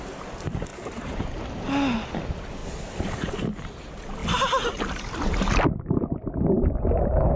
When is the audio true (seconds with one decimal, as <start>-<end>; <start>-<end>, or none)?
0.0-0.7; 1.6-7.4